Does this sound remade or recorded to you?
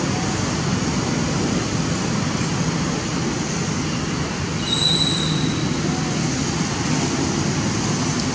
recorded